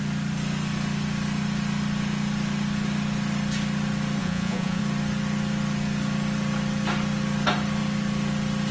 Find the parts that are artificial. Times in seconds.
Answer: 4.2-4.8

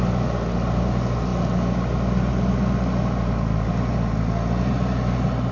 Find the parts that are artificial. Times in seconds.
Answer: none

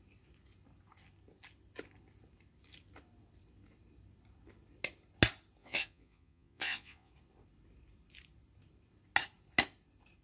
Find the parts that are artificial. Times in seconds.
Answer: 5.6-7.1

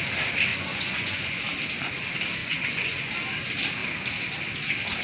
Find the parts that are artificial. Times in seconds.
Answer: 0.5-1.4; 2.4-3.1